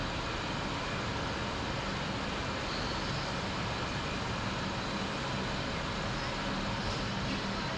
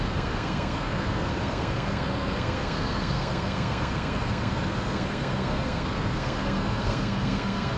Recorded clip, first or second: first